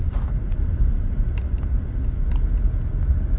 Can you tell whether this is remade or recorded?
recorded